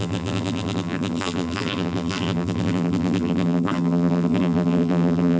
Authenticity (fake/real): fake